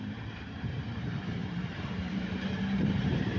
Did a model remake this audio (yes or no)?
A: yes